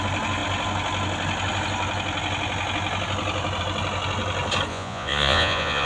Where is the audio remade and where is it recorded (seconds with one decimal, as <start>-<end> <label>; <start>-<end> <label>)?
0.0-4.7 recorded; 4.7-5.9 remade